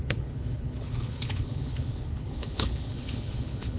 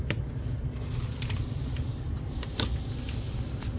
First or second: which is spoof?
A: first